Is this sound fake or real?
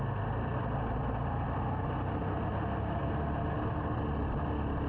real